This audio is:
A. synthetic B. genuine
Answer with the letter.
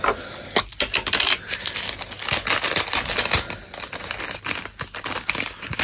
B